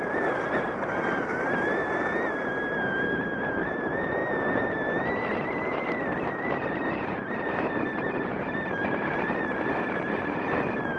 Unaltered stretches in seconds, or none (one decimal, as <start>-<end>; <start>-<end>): 4.2-6.4